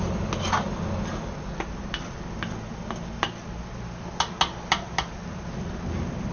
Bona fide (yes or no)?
yes